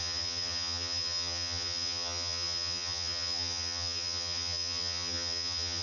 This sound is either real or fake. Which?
fake